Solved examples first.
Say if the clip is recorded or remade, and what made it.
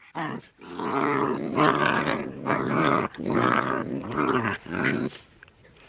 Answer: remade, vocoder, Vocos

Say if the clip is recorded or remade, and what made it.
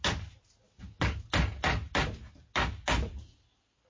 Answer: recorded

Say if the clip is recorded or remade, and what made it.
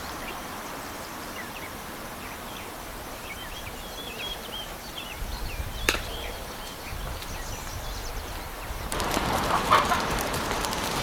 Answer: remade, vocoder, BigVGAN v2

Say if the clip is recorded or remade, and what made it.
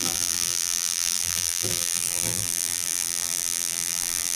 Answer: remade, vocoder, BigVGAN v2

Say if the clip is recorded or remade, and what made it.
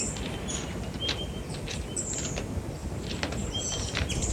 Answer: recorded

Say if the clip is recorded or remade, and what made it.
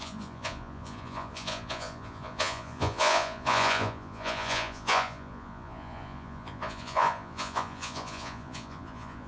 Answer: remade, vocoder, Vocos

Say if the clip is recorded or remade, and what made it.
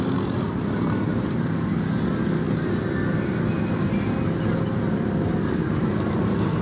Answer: recorded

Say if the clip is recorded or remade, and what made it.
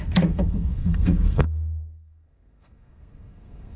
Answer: remade, codec, SNAC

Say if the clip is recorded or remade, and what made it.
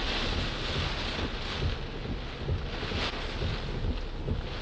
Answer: recorded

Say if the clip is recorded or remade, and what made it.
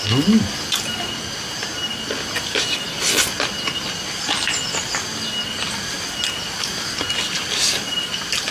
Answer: recorded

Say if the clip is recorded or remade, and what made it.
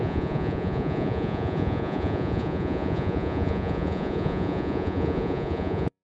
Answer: remade, vocoder, Vocos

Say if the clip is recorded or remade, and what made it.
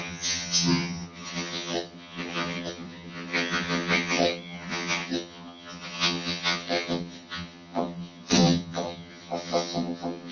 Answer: remade, vocoder, HiFi-GAN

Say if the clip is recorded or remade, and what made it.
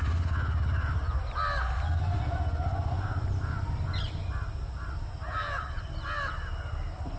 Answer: recorded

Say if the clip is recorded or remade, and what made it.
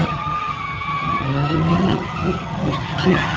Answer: remade, vocoder, HiFi-GAN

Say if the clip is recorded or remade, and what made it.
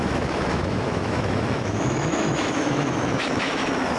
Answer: remade, autoencoder, DAC-VAE